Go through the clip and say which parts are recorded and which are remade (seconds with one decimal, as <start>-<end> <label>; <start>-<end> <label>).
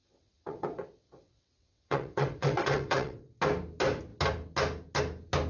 0.0-3.3 remade; 3.3-5.5 recorded